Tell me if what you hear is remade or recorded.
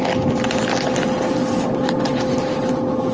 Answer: recorded